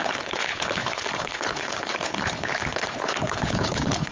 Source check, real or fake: fake